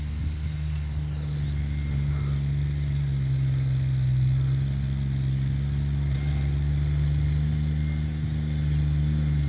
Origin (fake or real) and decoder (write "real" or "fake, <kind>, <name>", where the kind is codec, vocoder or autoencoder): real